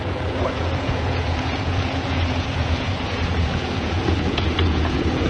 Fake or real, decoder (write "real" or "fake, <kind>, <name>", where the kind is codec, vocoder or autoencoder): fake, vocoder, Vocos